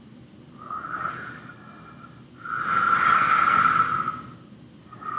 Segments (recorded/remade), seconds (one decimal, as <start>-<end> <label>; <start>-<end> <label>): 0.0-3.1 recorded; 3.1-3.6 remade; 3.6-5.2 recorded